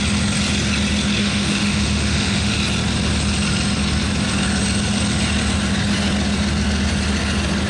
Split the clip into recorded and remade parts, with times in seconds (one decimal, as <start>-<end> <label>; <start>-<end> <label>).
0.0-1.2 recorded; 1.2-2.6 remade; 2.6-7.7 recorded